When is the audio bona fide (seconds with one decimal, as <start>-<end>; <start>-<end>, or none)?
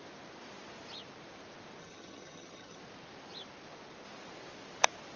0.0-1.8; 2.8-5.2